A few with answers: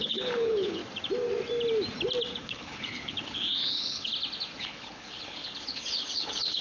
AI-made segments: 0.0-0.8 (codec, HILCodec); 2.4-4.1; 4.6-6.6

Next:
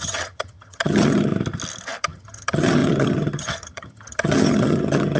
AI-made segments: 0.0-1.3 (vocoder, HiFi-GAN); 2.0-5.2